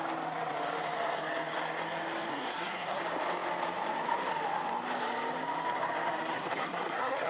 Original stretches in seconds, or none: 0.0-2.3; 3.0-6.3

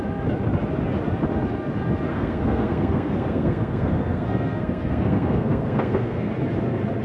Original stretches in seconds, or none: 0.0-2.1; 6.3-7.0

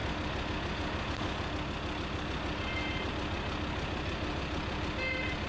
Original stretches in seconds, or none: 0.0-5.5